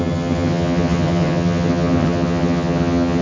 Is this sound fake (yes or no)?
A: yes